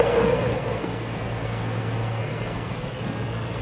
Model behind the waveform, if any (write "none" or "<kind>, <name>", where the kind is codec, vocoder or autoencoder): codec, SNAC